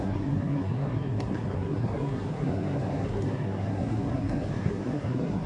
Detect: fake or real fake